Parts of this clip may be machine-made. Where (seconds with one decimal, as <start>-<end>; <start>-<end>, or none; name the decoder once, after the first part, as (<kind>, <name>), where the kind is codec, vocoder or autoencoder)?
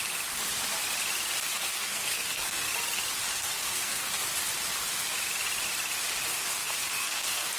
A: 1.5-2.7 (codec, SNAC); 3.3-4.1; 6.3-7.6